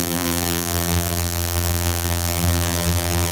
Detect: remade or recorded remade